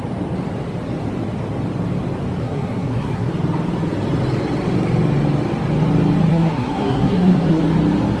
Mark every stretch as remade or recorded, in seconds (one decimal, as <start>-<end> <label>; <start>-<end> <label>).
0.0-2.4 recorded; 2.4-3.3 remade; 3.3-6.3 recorded; 6.3-7.6 remade; 7.6-8.2 recorded